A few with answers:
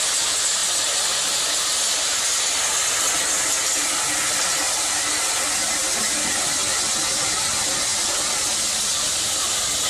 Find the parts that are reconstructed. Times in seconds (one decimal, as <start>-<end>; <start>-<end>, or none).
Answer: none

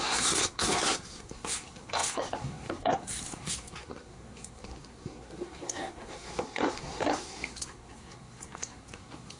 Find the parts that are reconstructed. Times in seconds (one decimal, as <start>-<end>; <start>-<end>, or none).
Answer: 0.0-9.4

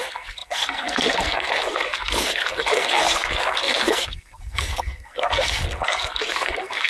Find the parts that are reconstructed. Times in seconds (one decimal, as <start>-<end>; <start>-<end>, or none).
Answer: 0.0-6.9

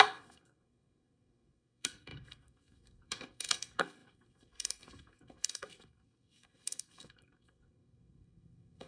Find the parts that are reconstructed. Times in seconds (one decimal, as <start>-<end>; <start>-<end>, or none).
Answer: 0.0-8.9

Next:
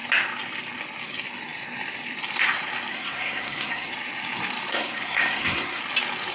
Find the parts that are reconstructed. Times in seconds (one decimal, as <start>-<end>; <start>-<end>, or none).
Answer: 2.9-3.9; 4.7-5.8

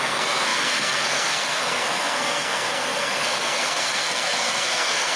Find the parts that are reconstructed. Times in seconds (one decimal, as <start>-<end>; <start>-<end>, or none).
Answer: 0.0-5.2

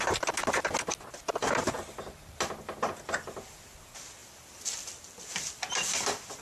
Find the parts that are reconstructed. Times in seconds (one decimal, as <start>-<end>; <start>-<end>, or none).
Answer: none

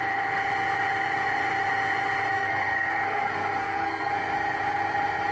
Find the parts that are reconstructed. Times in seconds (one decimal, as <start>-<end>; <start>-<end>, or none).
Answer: 2.3-4.1